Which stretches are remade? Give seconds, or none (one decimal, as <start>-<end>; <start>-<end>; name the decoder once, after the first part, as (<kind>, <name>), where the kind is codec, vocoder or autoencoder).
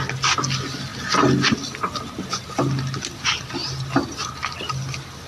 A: none